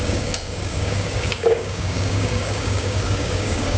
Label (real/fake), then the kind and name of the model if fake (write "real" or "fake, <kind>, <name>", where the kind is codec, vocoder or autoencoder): fake, codec, DAC